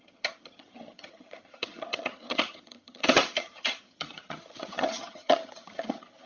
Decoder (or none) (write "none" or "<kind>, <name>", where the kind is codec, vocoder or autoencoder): vocoder, HiFi-GAN